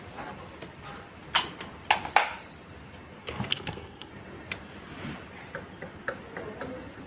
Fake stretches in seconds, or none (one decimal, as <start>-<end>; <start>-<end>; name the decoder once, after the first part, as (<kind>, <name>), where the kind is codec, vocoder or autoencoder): 3.5-4.1 (codec, SNAC)